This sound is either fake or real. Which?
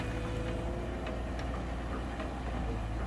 real